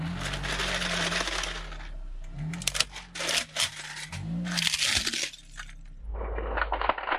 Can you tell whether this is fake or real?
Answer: real